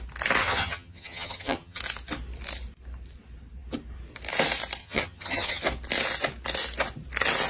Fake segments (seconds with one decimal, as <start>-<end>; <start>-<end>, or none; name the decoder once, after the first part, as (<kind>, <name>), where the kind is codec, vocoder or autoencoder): 0.4-1.8 (vocoder, HiFi-GAN); 4.8-5.6